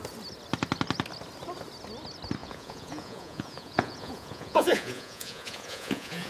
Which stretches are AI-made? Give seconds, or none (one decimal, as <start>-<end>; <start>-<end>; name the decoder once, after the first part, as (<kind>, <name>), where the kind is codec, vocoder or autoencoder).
2.4-6.3 (vocoder, Vocos)